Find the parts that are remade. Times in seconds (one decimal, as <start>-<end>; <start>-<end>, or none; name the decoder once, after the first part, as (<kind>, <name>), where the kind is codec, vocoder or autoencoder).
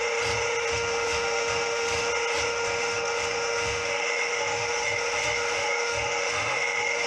0.7-2.1 (autoencoder, DAC-VAE); 2.5-7.1